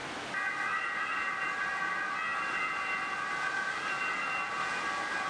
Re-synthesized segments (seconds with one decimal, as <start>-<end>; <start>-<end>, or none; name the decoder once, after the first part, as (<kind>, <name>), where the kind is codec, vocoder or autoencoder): none